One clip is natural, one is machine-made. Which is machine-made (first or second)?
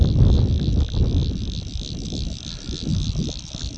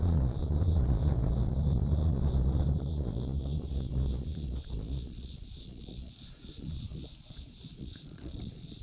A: second